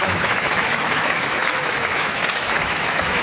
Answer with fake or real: fake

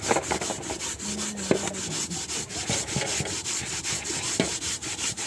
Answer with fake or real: real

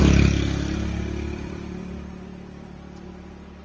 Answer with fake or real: fake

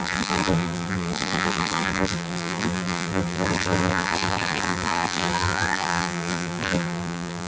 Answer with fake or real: fake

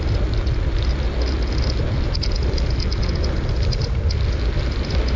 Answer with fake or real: real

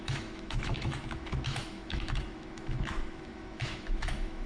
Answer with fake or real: fake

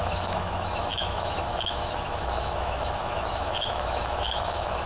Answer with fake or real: fake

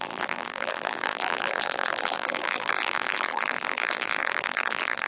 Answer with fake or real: fake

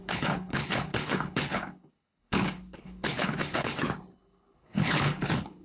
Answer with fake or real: fake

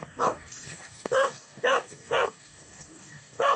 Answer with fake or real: fake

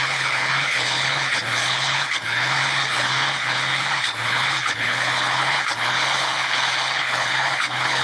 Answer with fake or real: fake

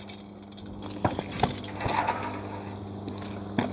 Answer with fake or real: real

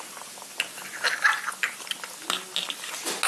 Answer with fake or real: real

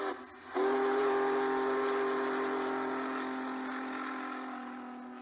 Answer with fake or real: real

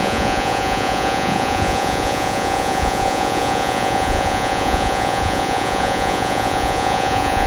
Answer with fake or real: fake